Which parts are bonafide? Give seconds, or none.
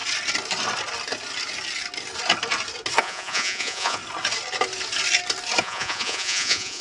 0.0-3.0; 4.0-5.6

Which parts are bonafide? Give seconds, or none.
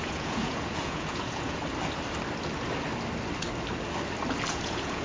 1.6-4.5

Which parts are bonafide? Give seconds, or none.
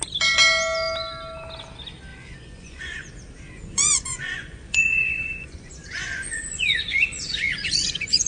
0.0-2.1; 3.1-3.6